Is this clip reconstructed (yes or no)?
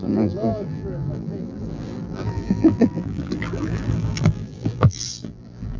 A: yes